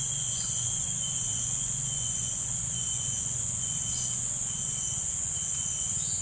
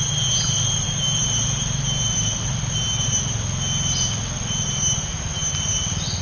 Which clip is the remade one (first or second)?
first